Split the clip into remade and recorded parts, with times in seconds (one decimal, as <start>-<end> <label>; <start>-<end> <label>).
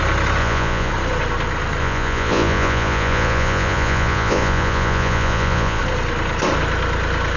0.0-0.4 recorded; 0.4-0.9 remade; 0.9-1.8 recorded; 1.8-5.8 remade; 5.8-7.4 recorded